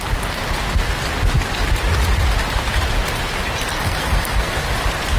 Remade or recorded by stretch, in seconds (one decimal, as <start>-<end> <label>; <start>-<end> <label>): 0.0-3.7 recorded; 3.7-4.6 remade; 4.6-5.2 recorded